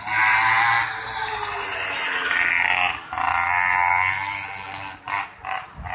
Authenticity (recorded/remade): recorded